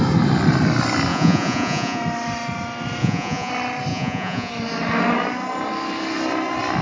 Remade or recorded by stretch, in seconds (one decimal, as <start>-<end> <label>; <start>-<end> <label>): 0.0-1.1 recorded; 1.1-2.0 remade; 2.0-3.0 recorded; 3.0-3.5 remade; 3.5-3.9 recorded; 3.9-4.5 remade; 4.5-6.8 recorded